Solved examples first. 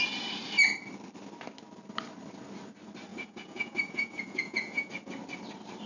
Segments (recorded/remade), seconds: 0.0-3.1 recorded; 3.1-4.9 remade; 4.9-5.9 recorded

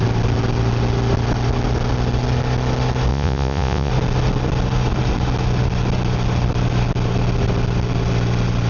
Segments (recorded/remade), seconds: 0.0-3.1 recorded; 3.1-3.9 remade; 3.9-8.7 recorded

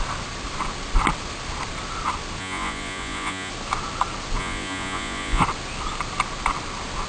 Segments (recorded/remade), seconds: 0.0-2.4 recorded; 2.4-3.5 remade; 3.5-4.4 recorded; 4.4-5.4 remade; 5.4-7.1 recorded

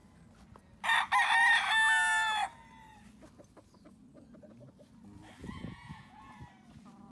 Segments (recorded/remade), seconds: 0.0-5.4 recorded; 5.4-6.4 remade; 6.4-7.1 recorded

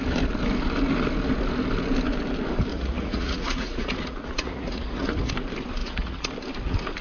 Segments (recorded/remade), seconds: 0.0-2.7 recorded; 2.7-5.3 remade; 5.3-5.8 recorded; 5.8-6.3 remade; 6.3-7.0 recorded

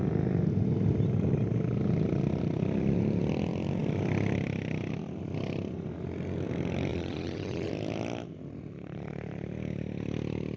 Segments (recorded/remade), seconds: 0.0-6.9 recorded; 6.9-7.7 remade; 7.7-10.6 recorded